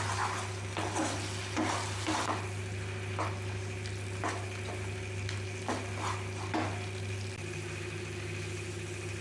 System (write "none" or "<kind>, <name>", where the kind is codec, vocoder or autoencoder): none